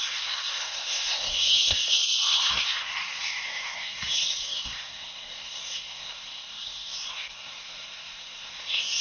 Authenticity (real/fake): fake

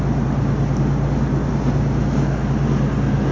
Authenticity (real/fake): real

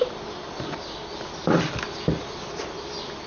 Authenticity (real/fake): real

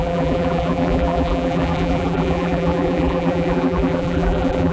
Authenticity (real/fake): fake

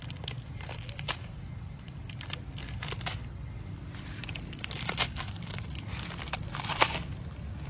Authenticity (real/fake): real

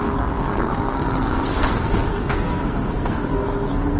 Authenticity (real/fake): fake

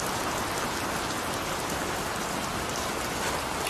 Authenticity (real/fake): real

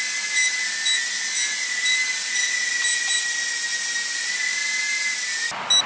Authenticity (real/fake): real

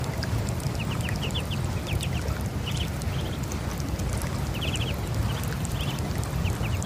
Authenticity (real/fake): real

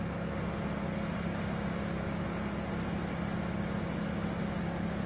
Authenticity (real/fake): real